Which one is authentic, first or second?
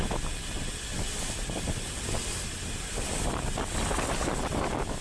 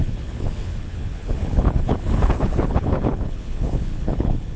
first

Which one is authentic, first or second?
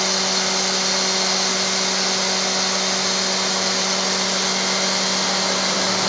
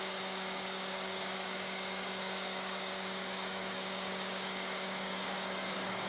first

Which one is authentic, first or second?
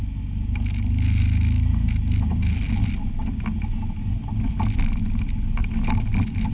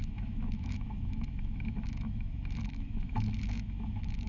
first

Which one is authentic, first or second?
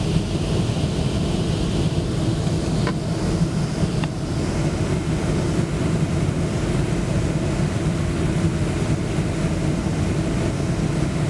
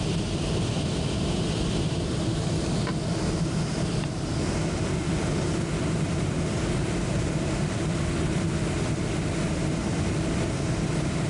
first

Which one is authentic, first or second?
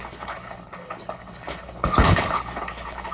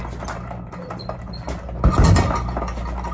second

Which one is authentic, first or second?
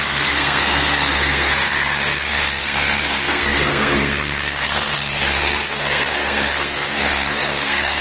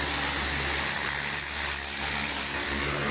second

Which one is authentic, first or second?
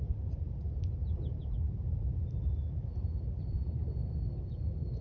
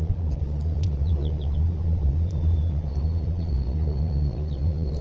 first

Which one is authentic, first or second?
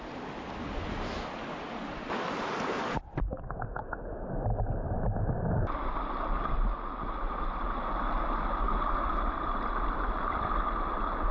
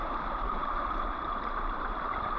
first